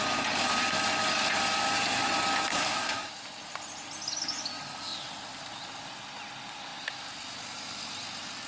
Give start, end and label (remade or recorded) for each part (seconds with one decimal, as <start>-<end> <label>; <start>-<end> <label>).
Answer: 0.0-2.5 recorded; 2.5-3.1 remade; 3.1-8.5 recorded